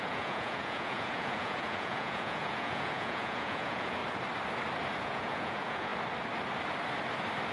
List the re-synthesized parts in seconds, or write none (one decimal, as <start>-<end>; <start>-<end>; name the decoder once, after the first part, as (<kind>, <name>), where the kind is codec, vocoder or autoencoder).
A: 0.0-4.0 (vocoder, Vocos); 5.0-5.9